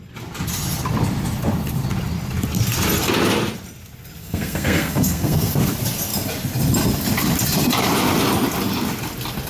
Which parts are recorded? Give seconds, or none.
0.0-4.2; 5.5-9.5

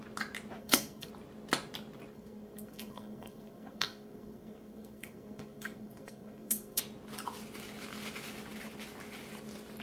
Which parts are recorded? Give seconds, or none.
0.0-0.6; 1.1-2.1; 6.8-9.8

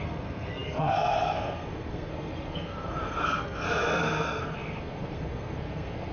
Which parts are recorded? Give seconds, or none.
none

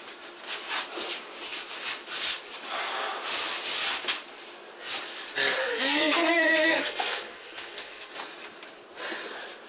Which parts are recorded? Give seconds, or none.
0.0-5.6; 8.1-9.7

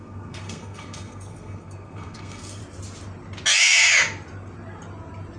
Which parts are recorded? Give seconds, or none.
2.6-5.4

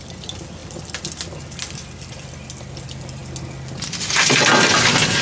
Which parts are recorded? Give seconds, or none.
0.0-5.2